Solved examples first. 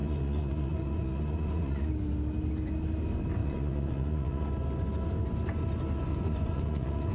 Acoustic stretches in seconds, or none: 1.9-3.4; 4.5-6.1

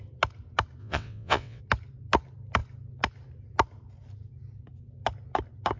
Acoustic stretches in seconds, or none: 0.0-0.8; 1.6-5.8

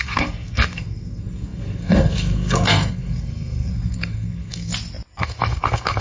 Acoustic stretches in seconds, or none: 4.7-5.2

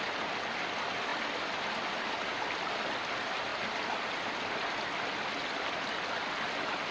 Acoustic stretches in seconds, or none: 0.0-6.9

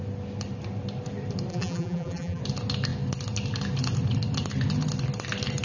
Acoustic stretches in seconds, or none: 0.0-1.5; 2.4-5.6

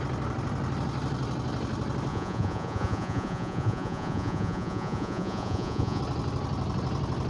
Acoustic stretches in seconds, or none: 0.0-2.1; 6.0-7.3

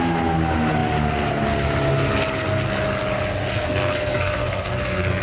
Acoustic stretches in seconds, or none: 0.0-3.5